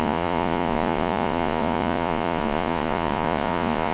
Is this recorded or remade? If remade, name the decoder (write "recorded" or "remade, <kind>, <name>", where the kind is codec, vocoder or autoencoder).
remade, vocoder, Vocos